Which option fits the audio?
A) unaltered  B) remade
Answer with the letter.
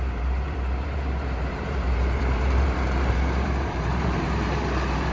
B